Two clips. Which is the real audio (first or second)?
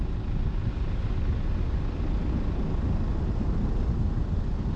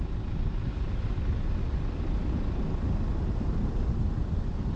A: first